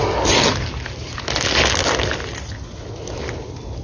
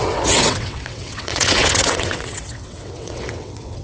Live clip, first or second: first